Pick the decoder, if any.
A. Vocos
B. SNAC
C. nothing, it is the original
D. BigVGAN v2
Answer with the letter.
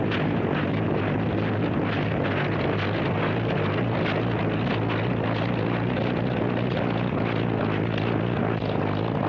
C